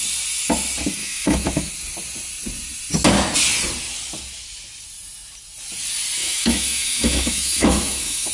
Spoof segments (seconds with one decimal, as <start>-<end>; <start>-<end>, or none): 1.0-1.7; 6.2-8.3

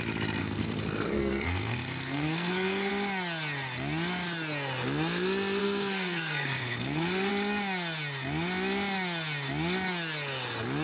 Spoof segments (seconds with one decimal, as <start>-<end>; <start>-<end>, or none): 0.4-2.9; 5.6-7.3

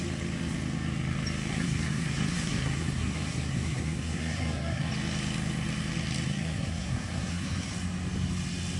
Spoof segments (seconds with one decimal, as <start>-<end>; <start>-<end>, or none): 1.5-4.9; 6.3-7.7

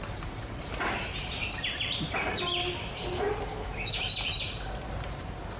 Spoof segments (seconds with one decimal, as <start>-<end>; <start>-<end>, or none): 3.5-4.0

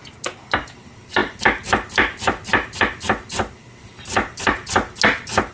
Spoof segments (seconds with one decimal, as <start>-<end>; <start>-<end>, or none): 1.2-4.5